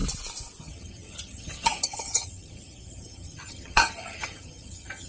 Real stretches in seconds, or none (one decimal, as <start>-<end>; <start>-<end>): 0.0-0.6